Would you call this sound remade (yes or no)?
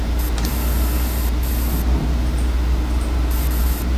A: yes